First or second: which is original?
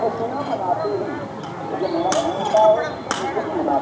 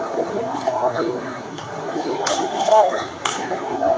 first